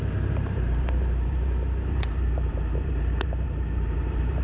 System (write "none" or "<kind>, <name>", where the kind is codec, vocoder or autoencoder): vocoder, BigVGAN v2